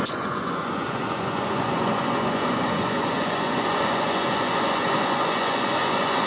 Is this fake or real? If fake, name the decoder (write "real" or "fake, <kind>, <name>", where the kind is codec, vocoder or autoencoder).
fake, vocoder, Vocos